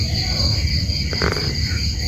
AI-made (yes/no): no